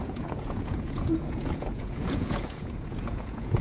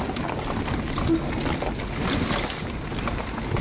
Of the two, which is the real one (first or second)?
second